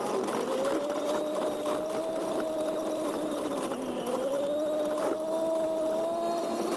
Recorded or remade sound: recorded